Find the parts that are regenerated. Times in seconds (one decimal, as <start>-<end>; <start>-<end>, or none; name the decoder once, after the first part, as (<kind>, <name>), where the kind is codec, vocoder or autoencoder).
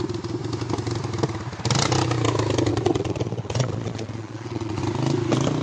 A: 2.7-4.8 (vocoder, Vocos)